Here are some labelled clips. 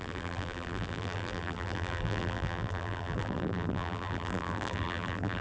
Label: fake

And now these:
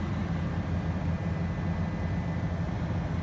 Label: real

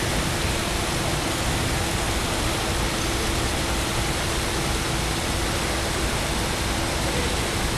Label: real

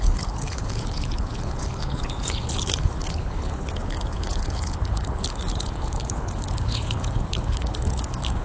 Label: fake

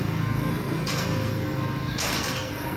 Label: fake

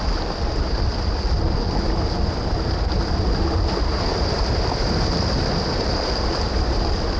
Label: real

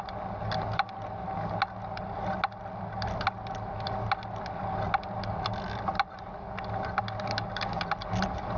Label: real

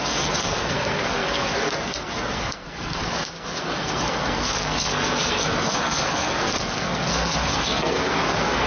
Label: fake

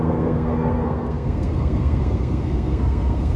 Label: fake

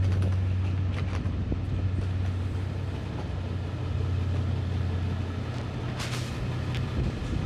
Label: real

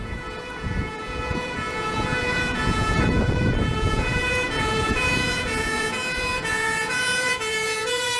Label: fake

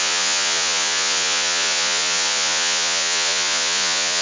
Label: fake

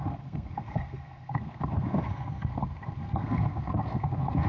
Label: fake